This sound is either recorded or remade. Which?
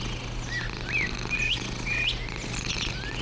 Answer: recorded